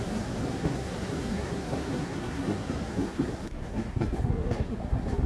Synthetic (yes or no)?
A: yes